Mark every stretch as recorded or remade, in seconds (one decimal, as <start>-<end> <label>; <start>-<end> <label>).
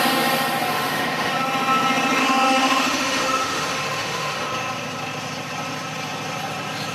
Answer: 0.0-0.7 recorded; 0.7-1.3 remade; 1.3-2.2 recorded; 2.2-4.5 remade; 4.5-6.9 recorded